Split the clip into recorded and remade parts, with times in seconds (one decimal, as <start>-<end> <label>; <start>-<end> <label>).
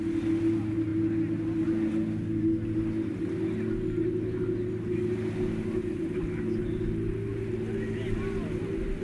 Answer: 0.0-9.0 recorded